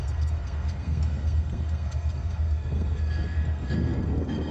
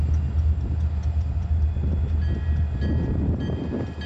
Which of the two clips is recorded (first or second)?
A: second